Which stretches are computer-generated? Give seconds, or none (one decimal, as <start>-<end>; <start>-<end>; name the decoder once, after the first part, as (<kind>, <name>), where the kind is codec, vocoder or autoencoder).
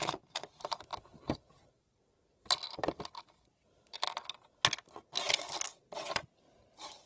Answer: none